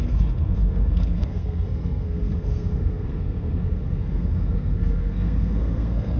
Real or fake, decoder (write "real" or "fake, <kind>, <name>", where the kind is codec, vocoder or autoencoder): fake, codec, SNAC